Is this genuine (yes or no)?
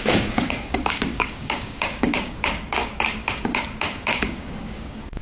no